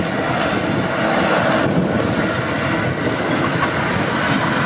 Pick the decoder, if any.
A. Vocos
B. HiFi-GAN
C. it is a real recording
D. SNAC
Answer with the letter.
C